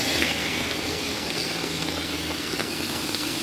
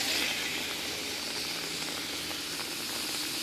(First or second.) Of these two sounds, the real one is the second